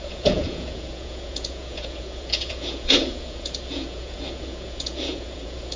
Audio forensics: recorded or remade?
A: remade